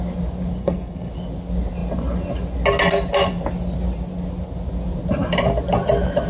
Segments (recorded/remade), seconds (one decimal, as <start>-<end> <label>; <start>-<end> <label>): 0.0-0.6 recorded; 0.6-1.1 remade; 1.1-6.3 recorded